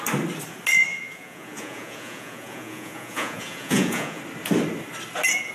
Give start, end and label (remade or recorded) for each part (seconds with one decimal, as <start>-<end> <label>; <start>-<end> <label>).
0.0-0.9 recorded; 0.9-4.2 remade; 4.2-5.5 recorded